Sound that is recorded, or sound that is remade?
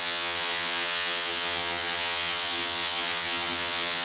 remade